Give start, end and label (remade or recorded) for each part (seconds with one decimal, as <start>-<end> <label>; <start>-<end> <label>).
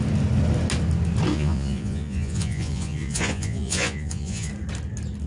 0.0-1.3 recorded; 1.3-4.5 remade; 4.5-5.3 recorded